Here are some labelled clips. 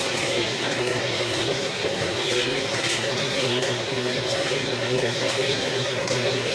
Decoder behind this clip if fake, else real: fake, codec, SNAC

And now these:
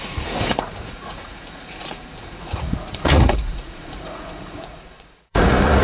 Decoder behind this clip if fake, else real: fake, vocoder, Vocos